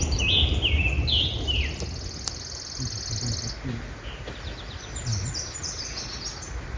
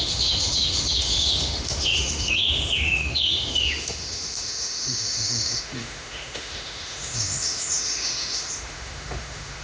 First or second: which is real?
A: first